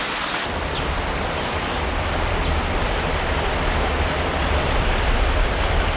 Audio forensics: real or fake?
real